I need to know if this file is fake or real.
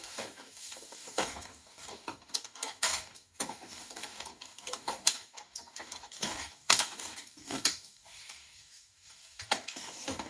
fake